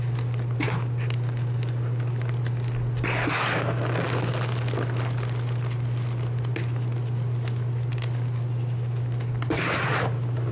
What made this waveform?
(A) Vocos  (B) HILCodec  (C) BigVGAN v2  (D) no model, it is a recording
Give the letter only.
D